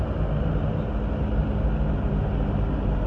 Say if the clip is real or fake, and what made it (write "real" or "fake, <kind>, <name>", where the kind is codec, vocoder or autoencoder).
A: real